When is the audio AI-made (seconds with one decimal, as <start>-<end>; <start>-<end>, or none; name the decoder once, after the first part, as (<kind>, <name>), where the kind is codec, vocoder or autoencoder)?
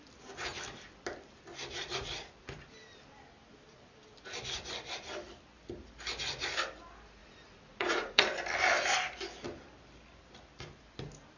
7.2-8.2 (vocoder, Vocos)